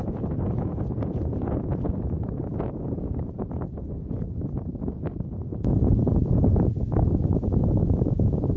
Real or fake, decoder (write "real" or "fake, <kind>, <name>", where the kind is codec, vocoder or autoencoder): fake, vocoder, Vocos